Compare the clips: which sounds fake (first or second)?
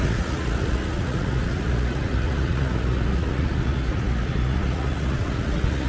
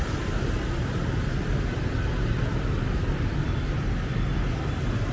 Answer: first